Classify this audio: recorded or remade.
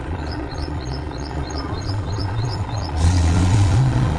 remade